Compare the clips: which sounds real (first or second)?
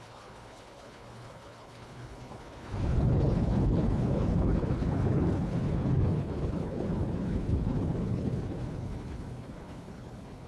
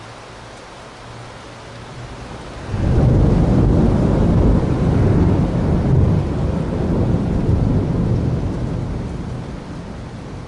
second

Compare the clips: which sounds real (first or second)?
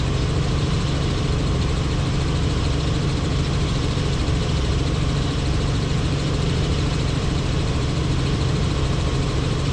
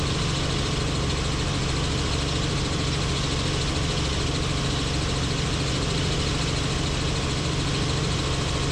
second